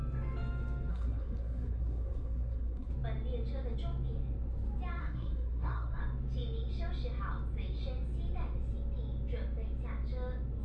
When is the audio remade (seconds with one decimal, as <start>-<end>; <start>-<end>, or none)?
0.9-2.9; 5.0-6.0